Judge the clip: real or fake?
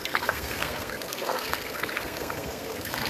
fake